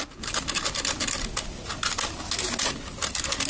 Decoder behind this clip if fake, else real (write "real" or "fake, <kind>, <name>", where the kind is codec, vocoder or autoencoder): real